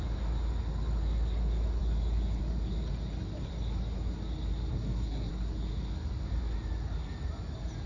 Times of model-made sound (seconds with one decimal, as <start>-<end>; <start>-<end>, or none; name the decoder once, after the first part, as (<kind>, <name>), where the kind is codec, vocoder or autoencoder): 4.7-5.3 (codec, SNAC)